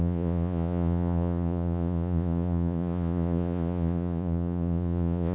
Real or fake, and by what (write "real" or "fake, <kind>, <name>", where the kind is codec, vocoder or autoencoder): fake, vocoder, Vocos